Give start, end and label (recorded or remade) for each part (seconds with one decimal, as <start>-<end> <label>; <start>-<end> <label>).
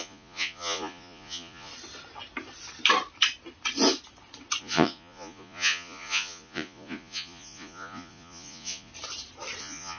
0.0-1.7 remade; 1.7-4.6 recorded; 4.6-8.9 remade; 8.9-9.6 recorded; 9.6-10.0 remade